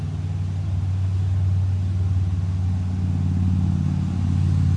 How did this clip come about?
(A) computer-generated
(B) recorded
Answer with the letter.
B